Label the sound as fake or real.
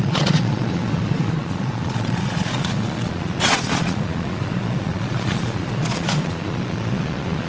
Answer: fake